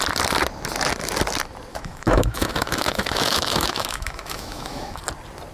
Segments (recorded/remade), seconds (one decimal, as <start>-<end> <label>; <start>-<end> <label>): 0.0-1.7 recorded; 1.7-5.0 remade; 5.0-5.5 recorded